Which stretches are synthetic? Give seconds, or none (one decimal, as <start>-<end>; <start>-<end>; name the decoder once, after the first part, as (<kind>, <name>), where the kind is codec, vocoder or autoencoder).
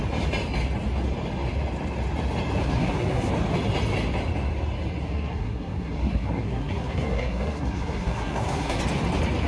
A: 2.6-3.3 (codec, SNAC); 5.0-8.8